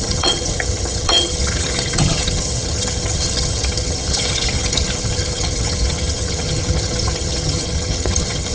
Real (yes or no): no